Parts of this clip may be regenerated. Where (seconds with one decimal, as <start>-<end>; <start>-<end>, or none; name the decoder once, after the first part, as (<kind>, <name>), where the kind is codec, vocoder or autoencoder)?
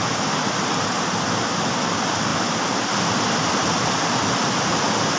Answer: none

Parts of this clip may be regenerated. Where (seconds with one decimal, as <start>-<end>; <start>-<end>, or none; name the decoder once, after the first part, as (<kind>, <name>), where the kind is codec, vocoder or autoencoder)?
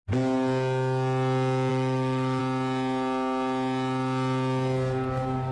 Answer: 1.7-2.4 (autoencoder, DAC-VAE)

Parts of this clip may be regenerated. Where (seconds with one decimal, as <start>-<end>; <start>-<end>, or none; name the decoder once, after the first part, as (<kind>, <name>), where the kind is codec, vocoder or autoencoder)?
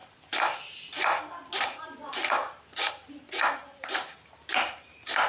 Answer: none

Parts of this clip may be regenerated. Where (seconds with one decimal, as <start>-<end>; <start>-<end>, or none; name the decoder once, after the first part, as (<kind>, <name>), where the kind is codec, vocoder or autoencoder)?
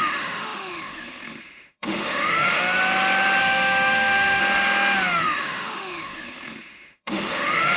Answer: 0.0-2.6 (autoencoder, DAC-VAE); 3.4-4.4; 5.2-7.8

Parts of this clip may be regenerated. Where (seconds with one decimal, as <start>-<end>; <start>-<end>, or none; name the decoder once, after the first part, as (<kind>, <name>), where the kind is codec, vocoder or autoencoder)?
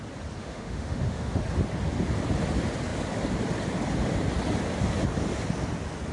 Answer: 0.4-1.4 (autoencoder, DAC-VAE)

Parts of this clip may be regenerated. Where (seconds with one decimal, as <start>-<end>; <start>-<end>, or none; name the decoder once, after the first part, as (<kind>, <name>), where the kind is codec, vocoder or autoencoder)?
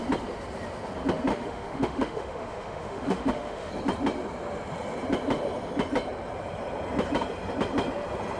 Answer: 1.3-3.7 (autoencoder, DAC-VAE)